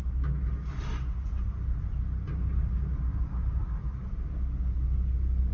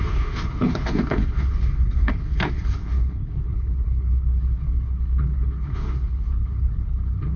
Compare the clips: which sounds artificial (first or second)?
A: second